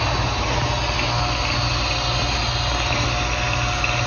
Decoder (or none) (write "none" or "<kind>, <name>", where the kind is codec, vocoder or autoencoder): none